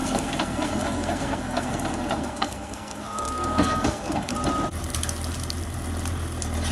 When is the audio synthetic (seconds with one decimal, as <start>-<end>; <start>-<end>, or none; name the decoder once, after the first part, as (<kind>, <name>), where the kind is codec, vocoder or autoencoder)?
0.0-4.3 (codec, SNAC)